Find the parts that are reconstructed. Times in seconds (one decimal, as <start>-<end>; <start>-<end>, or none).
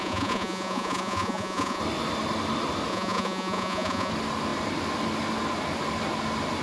0.0-1.8; 2.9-4.1